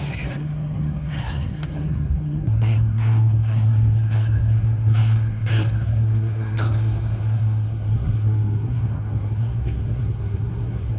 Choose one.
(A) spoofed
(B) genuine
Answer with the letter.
A